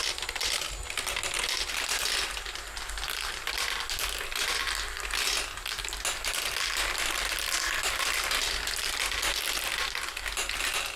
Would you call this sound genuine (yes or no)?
yes